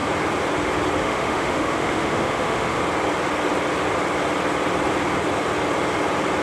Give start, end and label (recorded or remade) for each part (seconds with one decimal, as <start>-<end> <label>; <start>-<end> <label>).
0.0-1.0 recorded; 1.0-2.8 remade; 2.8-6.4 recorded